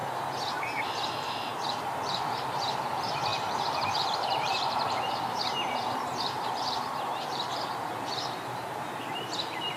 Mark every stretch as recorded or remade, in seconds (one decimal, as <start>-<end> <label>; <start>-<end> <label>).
0.0-0.6 recorded; 0.6-9.8 remade